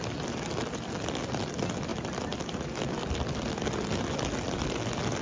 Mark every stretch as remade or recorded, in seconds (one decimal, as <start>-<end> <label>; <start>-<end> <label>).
0.0-5.2 recorded